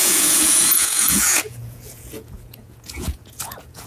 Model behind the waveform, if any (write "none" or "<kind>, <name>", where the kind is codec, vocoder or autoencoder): vocoder, Vocos